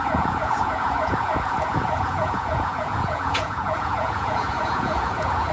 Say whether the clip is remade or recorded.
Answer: remade